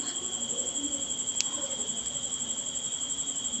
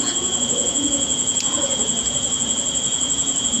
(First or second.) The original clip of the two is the first